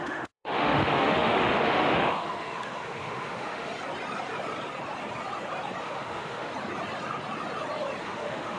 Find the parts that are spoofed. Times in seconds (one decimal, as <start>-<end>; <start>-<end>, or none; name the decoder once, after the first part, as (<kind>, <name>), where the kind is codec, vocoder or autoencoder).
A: 0.0-3.7 (autoencoder, DAC-VAE); 5.8-6.5; 8.0-8.6